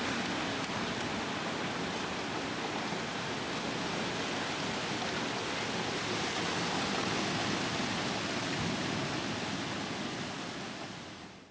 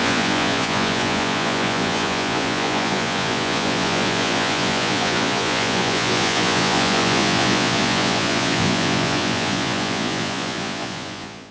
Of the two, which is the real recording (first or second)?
first